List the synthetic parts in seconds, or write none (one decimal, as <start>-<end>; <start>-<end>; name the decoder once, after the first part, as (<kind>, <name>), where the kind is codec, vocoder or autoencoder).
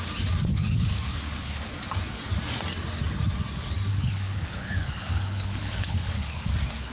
0.5-1.7 (codec, HILCodec); 3.9-6.5